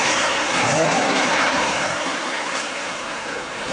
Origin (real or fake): fake